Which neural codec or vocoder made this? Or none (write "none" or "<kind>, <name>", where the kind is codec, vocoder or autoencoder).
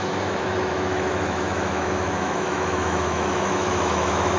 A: autoencoder, DAC-VAE